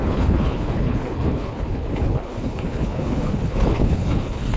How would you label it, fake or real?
fake